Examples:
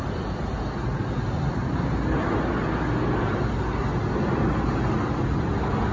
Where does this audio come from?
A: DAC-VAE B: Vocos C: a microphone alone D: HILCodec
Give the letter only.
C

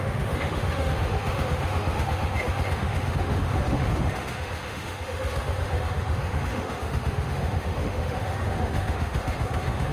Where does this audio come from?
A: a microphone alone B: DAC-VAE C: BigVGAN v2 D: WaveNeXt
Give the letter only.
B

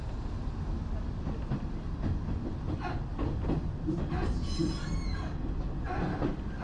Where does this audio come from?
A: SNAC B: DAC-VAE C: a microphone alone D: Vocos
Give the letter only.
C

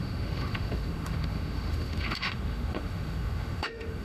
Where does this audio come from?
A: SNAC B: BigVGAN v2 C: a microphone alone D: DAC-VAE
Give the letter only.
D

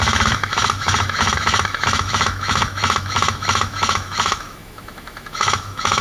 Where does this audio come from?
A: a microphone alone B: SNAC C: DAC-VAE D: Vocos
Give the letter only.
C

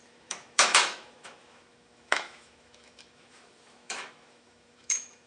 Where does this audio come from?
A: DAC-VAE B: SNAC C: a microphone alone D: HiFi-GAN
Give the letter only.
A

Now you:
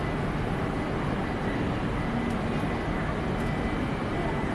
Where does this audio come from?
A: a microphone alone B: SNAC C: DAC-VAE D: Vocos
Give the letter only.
A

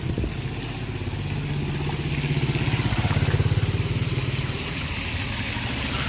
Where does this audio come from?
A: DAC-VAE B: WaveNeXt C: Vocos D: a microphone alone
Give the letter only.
D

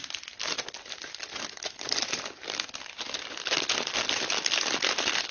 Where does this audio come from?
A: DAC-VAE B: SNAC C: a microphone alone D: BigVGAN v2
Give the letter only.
C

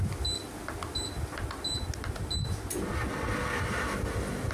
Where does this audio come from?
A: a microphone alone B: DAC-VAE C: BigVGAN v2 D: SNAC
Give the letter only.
A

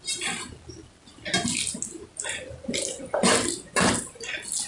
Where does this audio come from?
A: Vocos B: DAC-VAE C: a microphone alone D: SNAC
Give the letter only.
C